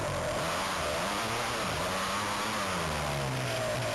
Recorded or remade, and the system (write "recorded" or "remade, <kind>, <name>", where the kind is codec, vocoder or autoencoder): recorded